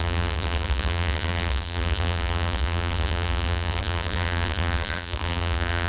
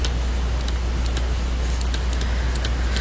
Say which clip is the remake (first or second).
first